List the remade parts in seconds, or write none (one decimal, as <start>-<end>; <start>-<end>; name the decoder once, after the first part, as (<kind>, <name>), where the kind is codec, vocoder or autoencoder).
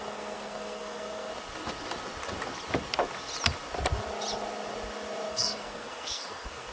0.0-1.3 (codec, SNAC); 5.3-6.7